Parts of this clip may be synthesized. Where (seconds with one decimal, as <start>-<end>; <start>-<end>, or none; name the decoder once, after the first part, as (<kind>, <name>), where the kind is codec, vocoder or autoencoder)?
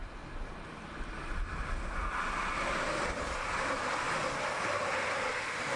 none